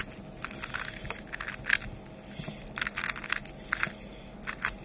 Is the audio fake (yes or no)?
no